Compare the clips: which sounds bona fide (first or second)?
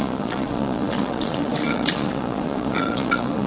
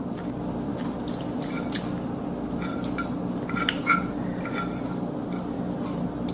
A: second